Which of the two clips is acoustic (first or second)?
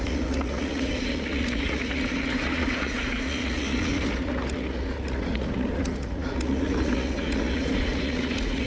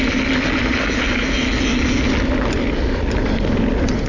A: second